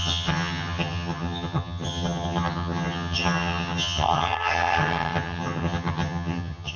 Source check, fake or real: fake